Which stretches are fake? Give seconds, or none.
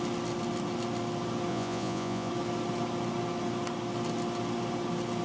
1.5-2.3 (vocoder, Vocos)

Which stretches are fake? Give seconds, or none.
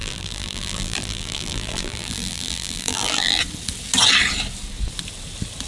0.0-3.4 (vocoder, BigVGAN v2)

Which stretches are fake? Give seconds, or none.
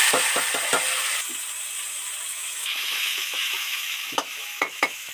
2.3-5.1 (autoencoder, DAC-VAE)